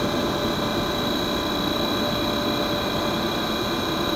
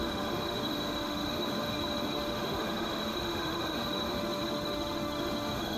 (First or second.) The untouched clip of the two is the first